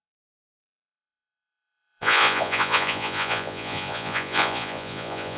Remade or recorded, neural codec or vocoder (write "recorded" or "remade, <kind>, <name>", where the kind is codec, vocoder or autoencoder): remade, vocoder, Vocos